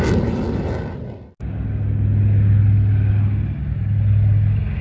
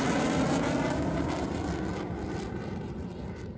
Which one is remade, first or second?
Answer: second